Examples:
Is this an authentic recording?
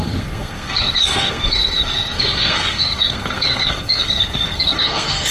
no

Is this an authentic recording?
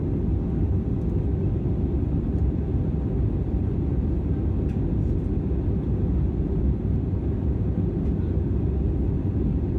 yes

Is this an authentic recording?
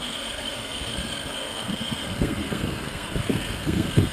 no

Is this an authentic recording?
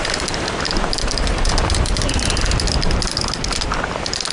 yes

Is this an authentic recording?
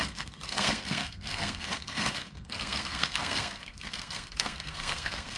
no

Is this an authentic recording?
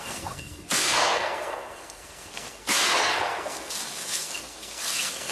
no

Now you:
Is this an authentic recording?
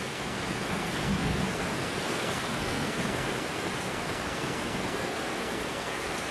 no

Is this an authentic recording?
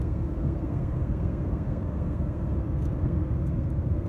no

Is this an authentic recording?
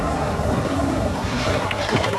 no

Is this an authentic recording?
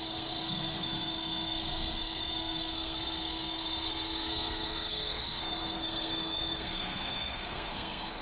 no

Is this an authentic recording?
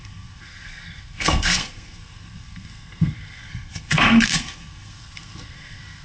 no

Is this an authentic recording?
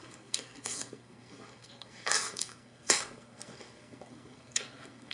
no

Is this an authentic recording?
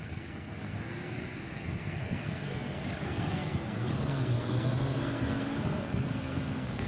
no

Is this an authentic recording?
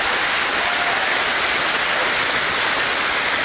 yes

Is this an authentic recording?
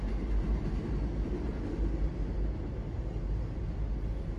yes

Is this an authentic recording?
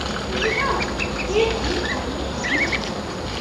yes